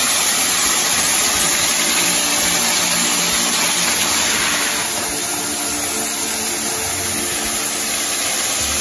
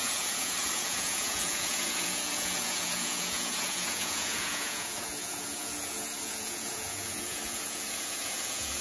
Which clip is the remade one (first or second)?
second